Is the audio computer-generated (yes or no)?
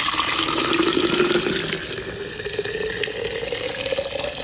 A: no